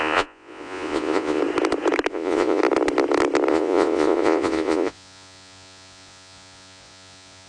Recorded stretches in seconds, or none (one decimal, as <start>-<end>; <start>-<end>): 1.4-2.1; 2.6-3.5